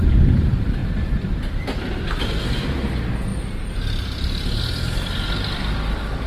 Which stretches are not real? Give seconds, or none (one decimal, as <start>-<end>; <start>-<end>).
none